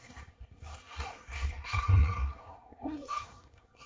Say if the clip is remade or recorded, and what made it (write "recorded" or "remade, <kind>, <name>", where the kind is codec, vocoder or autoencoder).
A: remade, codec, SNAC